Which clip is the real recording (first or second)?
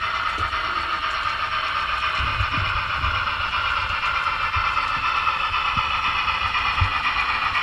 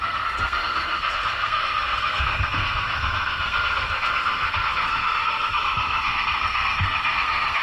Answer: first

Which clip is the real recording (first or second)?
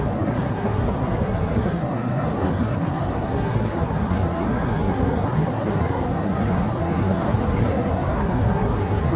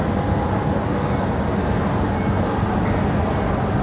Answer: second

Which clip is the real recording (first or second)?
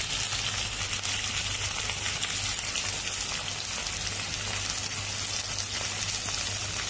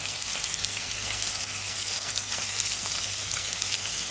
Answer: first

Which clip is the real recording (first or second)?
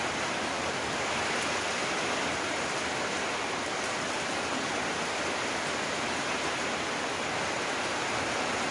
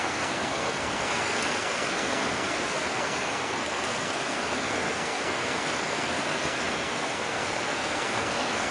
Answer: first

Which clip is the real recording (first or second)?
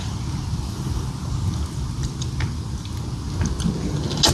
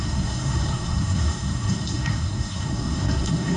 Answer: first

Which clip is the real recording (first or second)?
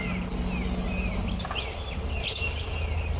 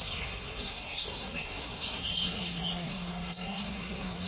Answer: first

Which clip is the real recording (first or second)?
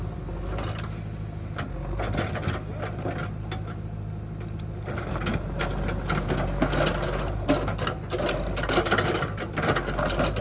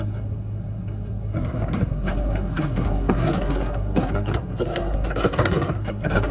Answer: first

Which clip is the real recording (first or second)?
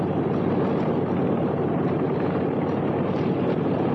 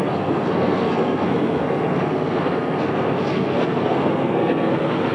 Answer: first